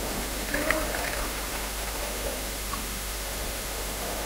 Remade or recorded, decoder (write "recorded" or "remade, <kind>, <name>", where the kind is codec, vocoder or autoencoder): remade, autoencoder, DAC-VAE